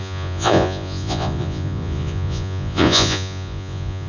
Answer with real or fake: fake